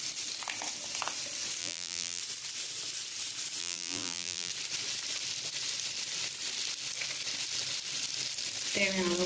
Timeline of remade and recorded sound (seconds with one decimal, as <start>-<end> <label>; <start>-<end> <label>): 0.0-1.6 recorded; 1.6-2.2 remade; 2.2-3.6 recorded; 3.6-4.5 remade; 4.5-9.3 recorded